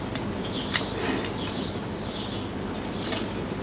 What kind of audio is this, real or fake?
real